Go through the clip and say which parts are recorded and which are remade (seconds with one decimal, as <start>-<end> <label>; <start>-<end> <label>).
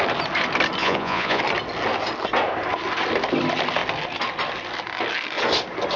0.0-0.8 recorded; 0.8-1.4 remade; 1.4-6.0 recorded